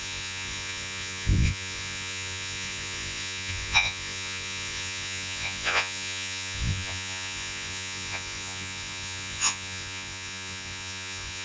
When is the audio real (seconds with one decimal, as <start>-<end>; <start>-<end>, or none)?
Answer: none